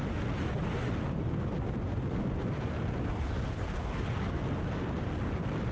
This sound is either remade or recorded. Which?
recorded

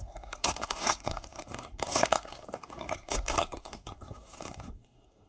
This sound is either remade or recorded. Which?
remade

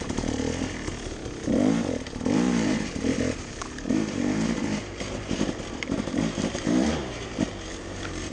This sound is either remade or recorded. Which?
remade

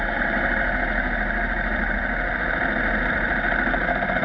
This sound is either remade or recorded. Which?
recorded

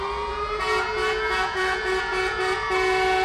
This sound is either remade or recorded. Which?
remade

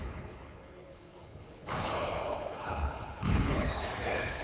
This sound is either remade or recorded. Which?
remade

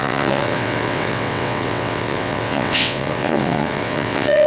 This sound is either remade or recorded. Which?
remade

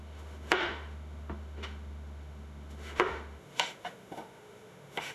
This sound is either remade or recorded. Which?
remade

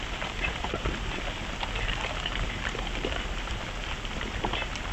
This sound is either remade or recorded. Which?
recorded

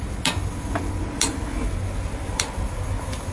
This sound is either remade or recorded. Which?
recorded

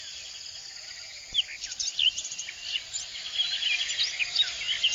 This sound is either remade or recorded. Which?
recorded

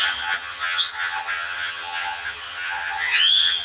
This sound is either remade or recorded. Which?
remade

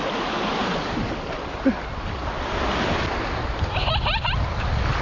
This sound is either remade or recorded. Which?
recorded